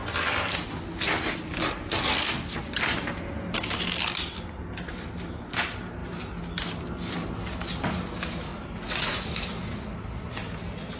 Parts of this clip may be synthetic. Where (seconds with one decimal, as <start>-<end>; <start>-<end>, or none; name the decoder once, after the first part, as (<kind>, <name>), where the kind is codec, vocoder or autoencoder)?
none